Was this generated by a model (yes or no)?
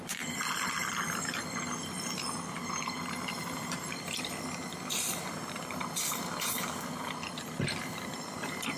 no